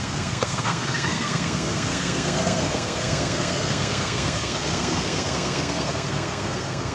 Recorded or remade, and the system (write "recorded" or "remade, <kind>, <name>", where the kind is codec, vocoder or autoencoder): remade, codec, SNAC